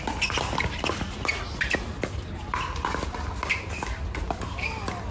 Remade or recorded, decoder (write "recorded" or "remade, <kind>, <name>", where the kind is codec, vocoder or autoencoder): recorded